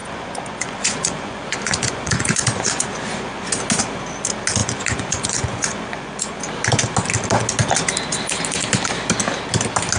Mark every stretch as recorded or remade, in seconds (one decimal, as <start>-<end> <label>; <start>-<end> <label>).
0.0-3.5 remade; 3.5-4.6 recorded; 4.6-6.4 remade; 6.4-10.0 recorded